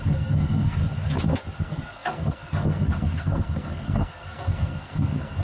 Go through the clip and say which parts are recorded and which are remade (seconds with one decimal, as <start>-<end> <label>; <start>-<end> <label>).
0.0-0.8 remade; 0.8-1.6 recorded; 1.6-5.4 remade